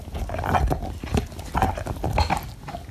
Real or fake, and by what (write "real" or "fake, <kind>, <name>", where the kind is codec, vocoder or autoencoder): real